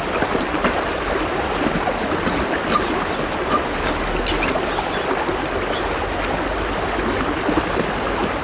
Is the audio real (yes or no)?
yes